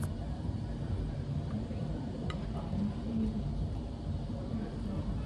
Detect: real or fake fake